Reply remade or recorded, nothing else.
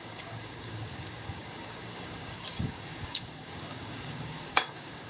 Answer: remade